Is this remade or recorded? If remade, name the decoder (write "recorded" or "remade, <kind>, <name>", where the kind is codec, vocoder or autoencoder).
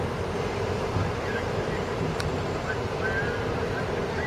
recorded